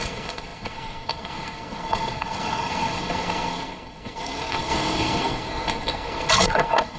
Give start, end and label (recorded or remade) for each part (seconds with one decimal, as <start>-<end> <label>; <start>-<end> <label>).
0.0-7.0 remade